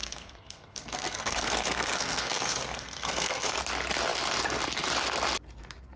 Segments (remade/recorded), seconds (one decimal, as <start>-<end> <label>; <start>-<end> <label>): 0.0-3.6 remade; 3.6-6.0 recorded